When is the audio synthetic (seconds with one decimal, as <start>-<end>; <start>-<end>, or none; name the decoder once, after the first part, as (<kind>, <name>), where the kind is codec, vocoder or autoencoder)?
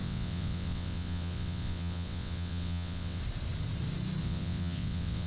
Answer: 0.0-3.2 (vocoder, WaveNeXt); 4.2-5.3